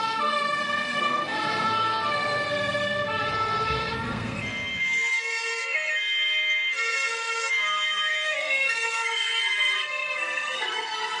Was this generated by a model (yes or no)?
yes